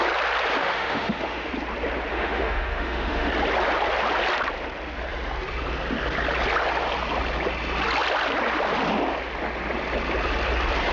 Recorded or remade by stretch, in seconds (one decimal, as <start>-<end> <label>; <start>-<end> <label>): 0.0-0.6 recorded; 0.6-1.5 remade; 1.5-2.1 recorded; 2.1-3.3 remade; 3.3-10.9 recorded